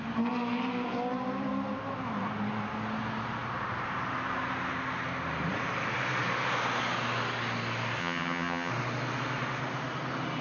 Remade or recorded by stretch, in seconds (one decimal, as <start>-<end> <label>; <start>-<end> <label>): 0.0-8.0 recorded; 8.0-8.7 remade; 8.7-10.4 recorded